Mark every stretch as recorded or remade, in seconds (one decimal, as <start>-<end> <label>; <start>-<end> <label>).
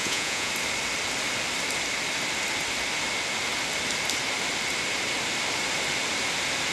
0.0-0.5 remade; 0.5-6.7 recorded